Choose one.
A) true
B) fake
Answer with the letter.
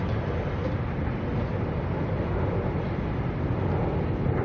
A